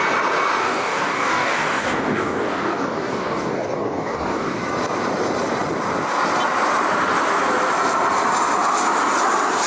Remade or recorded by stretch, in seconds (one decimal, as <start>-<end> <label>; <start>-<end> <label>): 0.0-0.6 recorded; 0.6-4.6 remade; 4.6-9.7 recorded